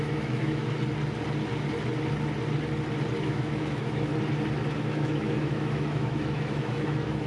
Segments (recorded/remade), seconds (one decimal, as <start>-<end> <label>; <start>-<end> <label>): 0.0-0.6 remade; 0.6-3.2 recorded; 3.2-4.1 remade; 4.1-4.8 recorded; 4.8-7.3 remade